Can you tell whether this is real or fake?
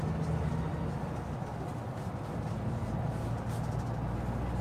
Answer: real